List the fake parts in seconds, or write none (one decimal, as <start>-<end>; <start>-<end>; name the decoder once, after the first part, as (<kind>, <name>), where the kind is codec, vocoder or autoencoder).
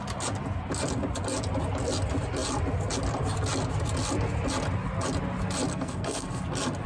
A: 5.7-6.4 (codec, SNAC)